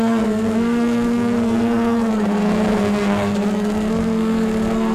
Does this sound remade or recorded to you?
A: remade